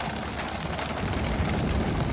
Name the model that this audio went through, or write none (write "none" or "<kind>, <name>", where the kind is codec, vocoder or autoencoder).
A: none